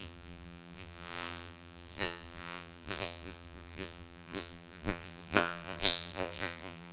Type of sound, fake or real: fake